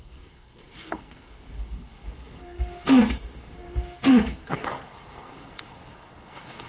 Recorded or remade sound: remade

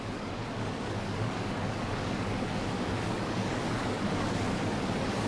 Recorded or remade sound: remade